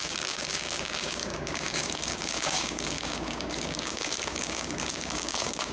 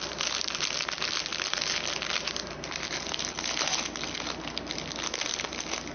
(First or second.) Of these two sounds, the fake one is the first